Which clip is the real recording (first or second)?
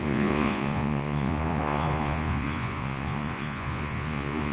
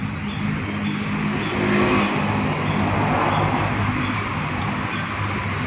second